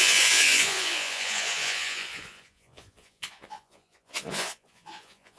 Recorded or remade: remade